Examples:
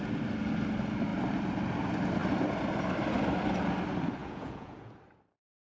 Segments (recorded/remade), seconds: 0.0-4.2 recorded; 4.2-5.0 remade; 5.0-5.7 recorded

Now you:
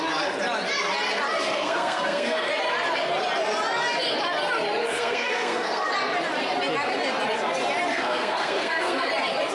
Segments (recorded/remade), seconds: 0.0-1.5 recorded; 1.5-2.5 remade; 2.5-4.8 recorded; 4.8-5.9 remade; 5.9-7.9 recorded; 7.9-9.1 remade; 9.1-9.5 recorded

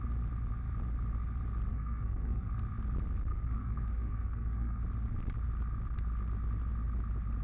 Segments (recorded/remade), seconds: 0.0-1.7 recorded; 1.7-2.5 remade; 2.5-3.3 recorded; 3.3-4.8 remade; 4.8-7.4 recorded

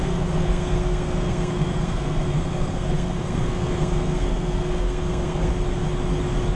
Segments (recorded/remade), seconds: 0.0-5.5 remade; 5.5-6.6 recorded

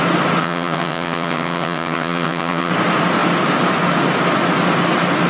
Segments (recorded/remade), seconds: 0.0-0.4 recorded; 0.4-2.7 remade; 2.7-5.3 recorded

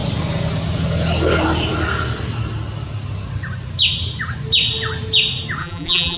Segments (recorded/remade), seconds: 0.0-5.6 recorded; 5.6-6.2 remade